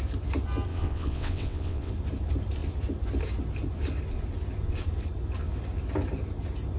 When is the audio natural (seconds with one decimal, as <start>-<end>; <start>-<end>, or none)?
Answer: 0.0-0.7; 1.9-6.8